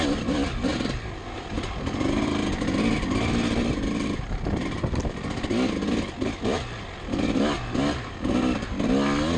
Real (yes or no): yes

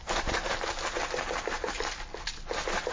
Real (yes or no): yes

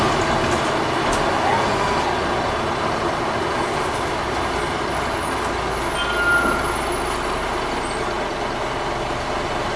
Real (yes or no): yes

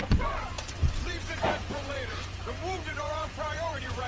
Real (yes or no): no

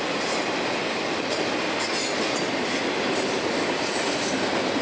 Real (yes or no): yes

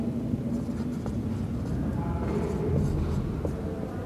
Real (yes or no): yes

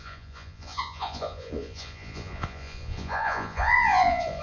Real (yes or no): no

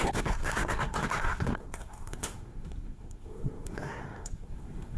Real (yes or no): no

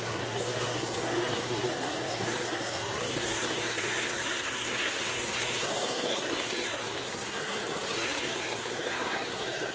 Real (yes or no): no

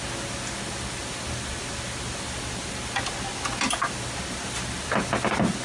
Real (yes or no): yes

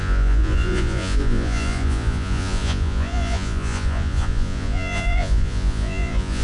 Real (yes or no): no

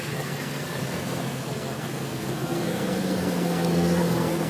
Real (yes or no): no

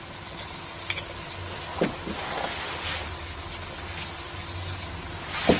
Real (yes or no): yes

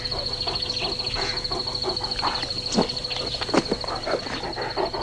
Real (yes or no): yes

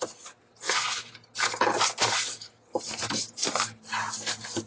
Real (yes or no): yes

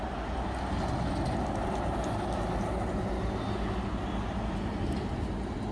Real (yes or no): yes